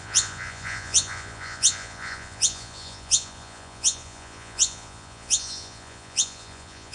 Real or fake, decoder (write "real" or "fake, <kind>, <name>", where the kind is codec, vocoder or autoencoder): fake, vocoder, Vocos